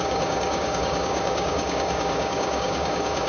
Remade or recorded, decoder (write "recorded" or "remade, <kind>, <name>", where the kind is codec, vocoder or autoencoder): remade, codec, DAC